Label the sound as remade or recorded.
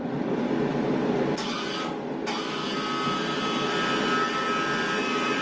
recorded